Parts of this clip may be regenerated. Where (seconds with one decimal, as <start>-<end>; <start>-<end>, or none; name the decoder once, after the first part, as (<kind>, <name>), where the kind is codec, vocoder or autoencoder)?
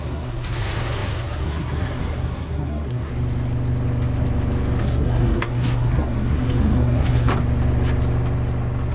0.0-3.1 (codec, SNAC); 4.8-7.3